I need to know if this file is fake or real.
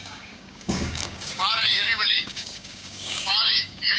fake